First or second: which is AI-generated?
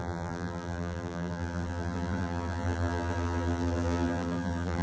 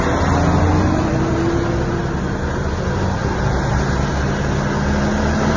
first